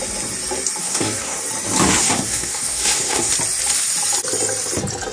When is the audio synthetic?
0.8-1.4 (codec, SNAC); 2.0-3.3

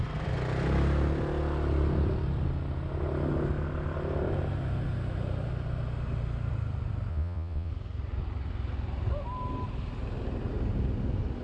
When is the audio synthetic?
7.1-7.7 (vocoder, Vocos)

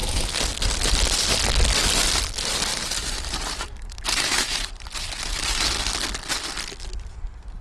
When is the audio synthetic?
2.7-5.7 (vocoder, BigVGAN v2)

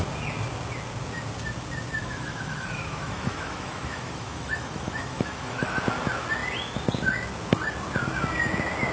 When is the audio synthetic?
2.0-5.8 (autoencoder, DAC-VAE)

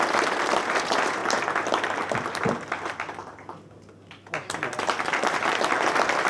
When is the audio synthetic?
none